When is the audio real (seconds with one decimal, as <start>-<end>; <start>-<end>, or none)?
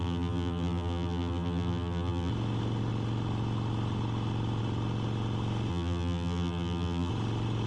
2.3-5.7; 7.1-7.7